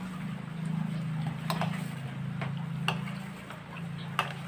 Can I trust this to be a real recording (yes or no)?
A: yes